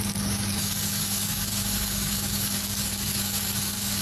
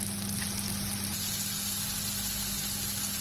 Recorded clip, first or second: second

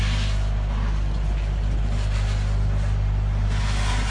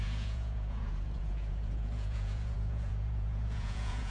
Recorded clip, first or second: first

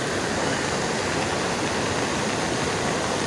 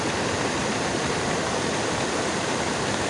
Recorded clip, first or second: first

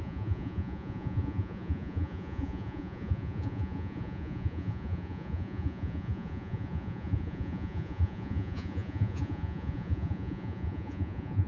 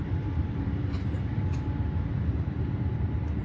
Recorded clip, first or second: second